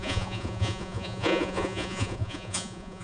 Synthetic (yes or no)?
yes